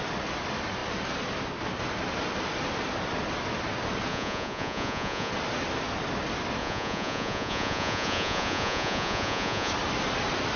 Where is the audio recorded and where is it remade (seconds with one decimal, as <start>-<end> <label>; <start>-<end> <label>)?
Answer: 0.0-4.1 recorded; 4.1-5.3 remade; 5.3-6.6 recorded; 6.6-9.7 remade; 9.7-10.6 recorded